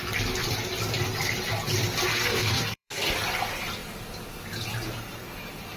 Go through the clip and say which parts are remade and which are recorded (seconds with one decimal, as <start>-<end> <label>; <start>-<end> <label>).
0.0-2.1 recorded; 2.1-3.0 remade; 3.0-5.8 recorded

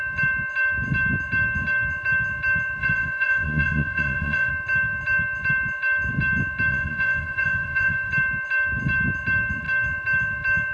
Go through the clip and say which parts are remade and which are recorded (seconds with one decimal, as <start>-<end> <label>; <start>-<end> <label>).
0.0-2.8 recorded; 2.8-4.5 remade; 4.5-6.7 recorded; 6.7-8.1 remade; 8.1-10.7 recorded

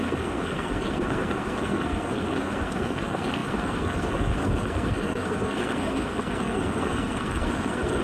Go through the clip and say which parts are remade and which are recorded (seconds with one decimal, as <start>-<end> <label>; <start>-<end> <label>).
0.0-8.0 remade

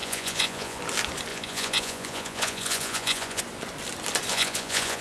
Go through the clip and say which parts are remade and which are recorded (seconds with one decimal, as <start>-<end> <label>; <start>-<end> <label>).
0.0-0.8 remade; 0.8-1.3 recorded; 1.3-3.4 remade; 3.4-4.3 recorded; 4.3-5.0 remade

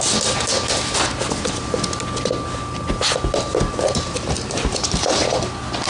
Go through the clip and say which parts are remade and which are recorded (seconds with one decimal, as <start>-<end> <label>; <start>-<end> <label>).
0.0-3.5 recorded; 3.5-5.3 remade; 5.3-5.9 recorded

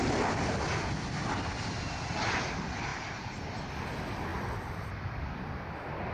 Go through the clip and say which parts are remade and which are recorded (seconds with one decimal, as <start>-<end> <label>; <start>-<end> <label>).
0.0-2.9 recorded; 2.9-3.4 remade; 3.4-4.3 recorded; 4.3-6.1 remade